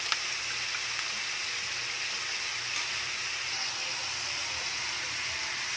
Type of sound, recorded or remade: recorded